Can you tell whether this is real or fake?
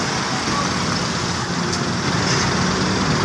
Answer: real